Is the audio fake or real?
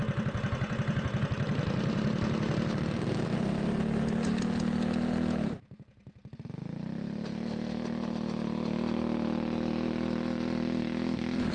real